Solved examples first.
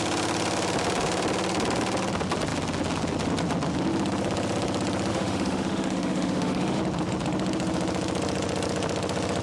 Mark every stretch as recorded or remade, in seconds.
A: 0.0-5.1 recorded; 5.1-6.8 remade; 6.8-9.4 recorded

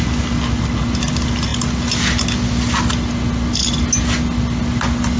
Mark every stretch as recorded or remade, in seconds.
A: 0.0-5.2 recorded

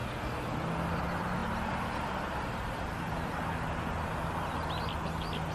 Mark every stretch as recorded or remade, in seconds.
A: 0.0-5.5 recorded